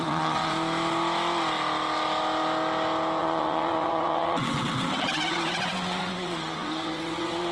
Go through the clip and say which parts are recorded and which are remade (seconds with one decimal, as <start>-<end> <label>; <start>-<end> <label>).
0.0-0.5 remade; 0.5-3.2 recorded; 3.2-7.5 remade